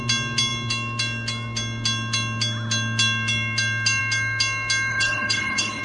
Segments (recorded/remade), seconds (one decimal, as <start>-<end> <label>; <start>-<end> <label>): 0.0-4.9 recorded; 4.9-5.8 remade